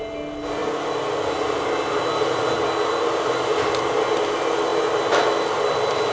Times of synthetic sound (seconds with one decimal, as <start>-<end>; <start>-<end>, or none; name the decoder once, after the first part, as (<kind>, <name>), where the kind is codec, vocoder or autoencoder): none